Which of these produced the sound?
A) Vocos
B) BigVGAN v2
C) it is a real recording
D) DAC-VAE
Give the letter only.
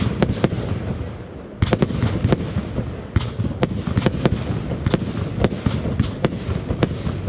C